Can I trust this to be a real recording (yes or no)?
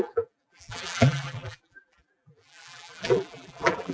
no